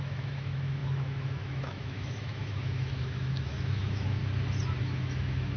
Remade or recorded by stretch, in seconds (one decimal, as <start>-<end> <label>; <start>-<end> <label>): 0.0-4.2 remade; 4.2-4.8 recorded; 4.8-5.6 remade